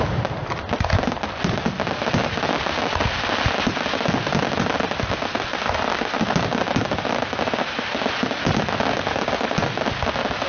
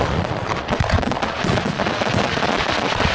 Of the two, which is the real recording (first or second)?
first